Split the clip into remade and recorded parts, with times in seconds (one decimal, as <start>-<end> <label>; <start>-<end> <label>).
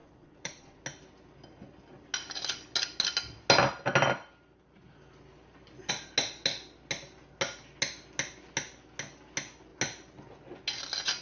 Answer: 0.0-0.8 remade; 0.8-11.2 recorded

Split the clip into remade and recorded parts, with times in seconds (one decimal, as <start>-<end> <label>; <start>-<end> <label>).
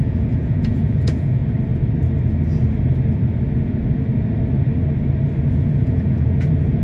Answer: 0.0-1.4 remade; 1.4-5.5 recorded; 5.5-6.8 remade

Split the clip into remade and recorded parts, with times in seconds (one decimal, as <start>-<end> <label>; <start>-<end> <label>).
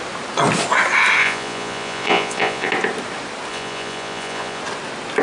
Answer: 0.0-1.2 recorded; 1.2-2.7 remade; 2.7-3.5 recorded; 3.5-4.6 remade; 4.6-5.2 recorded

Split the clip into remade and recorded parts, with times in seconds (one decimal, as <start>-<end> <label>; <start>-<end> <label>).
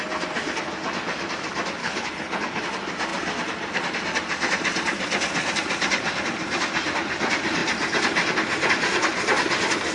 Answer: 0.0-1.8 recorded; 1.8-2.6 remade; 2.6-9.9 recorded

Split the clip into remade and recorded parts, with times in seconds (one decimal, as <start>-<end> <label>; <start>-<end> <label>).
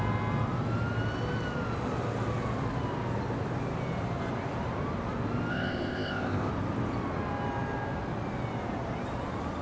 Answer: 0.0-5.5 recorded; 5.5-6.5 remade; 6.5-9.6 recorded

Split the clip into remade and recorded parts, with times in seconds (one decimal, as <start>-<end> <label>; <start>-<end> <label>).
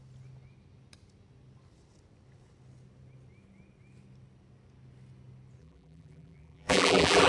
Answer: 0.0-5.6 recorded; 5.6-7.3 remade